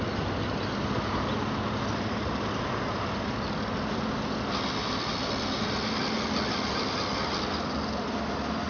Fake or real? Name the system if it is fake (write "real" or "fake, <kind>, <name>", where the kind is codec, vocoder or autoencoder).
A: real